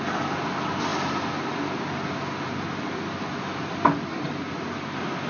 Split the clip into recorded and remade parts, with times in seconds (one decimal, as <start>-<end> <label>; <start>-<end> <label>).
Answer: 0.0-5.3 recorded